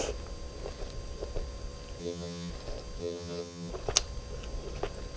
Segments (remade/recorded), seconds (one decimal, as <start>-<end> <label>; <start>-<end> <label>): 0.0-2.0 recorded; 2.0-2.5 remade; 2.5-3.0 recorded; 3.0-3.7 remade; 3.7-5.2 recorded